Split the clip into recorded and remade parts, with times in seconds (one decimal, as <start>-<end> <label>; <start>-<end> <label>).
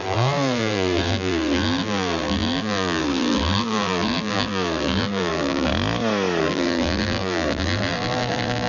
0.0-5.7 remade; 5.7-6.4 recorded; 6.4-8.7 remade